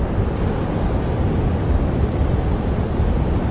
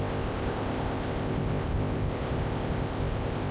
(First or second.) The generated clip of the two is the second